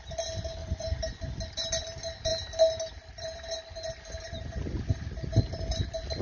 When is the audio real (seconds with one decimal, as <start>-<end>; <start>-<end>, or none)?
0.0-0.6; 1.1-6.2